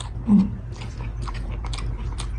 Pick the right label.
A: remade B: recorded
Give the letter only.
B